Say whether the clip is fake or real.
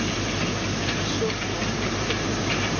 real